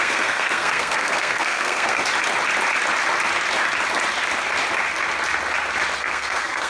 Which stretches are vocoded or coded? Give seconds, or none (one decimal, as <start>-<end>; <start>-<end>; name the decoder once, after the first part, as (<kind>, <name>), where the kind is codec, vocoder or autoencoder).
0.0-2.0 (codec, SNAC); 6.0-6.7